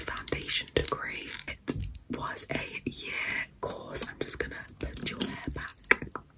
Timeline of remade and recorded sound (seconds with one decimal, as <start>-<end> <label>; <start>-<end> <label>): 0.0-5.7 recorded; 5.7-6.4 remade